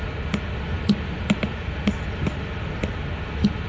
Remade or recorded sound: recorded